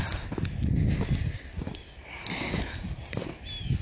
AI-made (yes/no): no